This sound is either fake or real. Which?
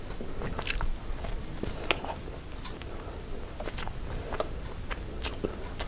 real